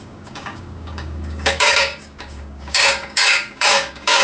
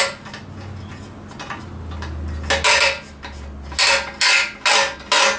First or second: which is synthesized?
first